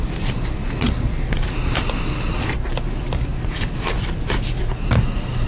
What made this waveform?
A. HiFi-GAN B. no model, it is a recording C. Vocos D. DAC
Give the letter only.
B